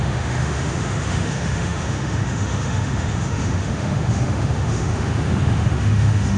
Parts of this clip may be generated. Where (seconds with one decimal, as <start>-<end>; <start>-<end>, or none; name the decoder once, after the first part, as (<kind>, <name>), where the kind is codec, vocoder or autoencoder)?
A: 0.0-6.4 (autoencoder, DAC-VAE)